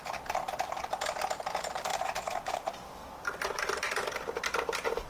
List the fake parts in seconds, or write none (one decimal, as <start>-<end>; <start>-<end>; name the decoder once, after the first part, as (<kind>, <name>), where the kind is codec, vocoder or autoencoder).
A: 1.9-2.5 (vocoder, BigVGAN v2)